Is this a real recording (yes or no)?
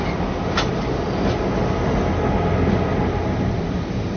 yes